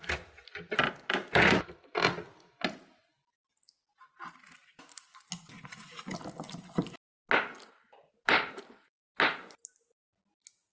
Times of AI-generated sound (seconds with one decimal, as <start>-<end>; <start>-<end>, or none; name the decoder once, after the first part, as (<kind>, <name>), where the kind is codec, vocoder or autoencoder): none